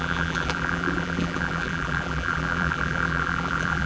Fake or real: fake